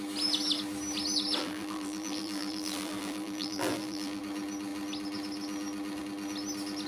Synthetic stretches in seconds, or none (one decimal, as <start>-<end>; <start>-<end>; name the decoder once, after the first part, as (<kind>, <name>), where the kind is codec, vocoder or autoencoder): 1.4-4.2 (vocoder, BigVGAN v2)